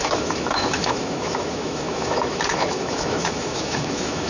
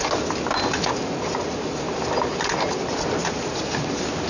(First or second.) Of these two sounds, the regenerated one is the first